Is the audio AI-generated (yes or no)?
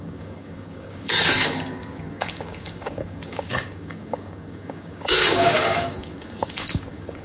yes